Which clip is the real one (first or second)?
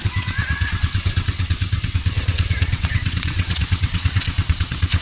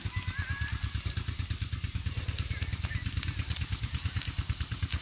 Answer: second